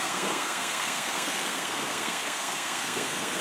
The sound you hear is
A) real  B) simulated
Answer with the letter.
B